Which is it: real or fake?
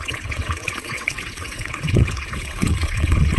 fake